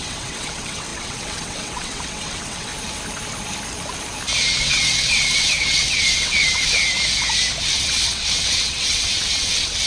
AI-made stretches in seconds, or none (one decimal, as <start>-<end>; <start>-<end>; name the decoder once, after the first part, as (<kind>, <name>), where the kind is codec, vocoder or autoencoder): 0.0-2.7 (vocoder, WaveNeXt); 4.6-6.8; 7.6-9.9